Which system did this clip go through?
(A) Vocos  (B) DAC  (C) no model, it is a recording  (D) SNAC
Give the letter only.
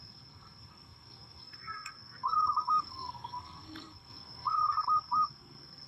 D